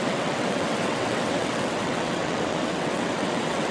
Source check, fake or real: fake